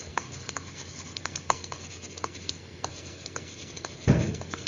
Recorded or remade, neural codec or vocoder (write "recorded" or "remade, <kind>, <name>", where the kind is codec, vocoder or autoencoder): remade, codec, SNAC